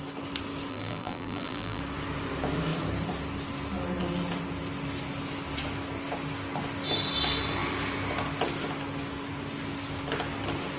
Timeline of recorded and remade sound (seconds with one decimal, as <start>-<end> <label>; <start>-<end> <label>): 0.0-0.7 recorded; 0.7-1.8 remade; 1.8-10.8 recorded